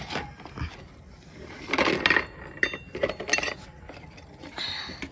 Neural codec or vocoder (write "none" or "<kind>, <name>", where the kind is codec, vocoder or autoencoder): none